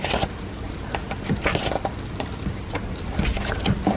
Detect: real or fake real